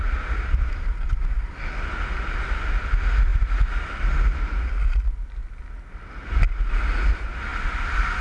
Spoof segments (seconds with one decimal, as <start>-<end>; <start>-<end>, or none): none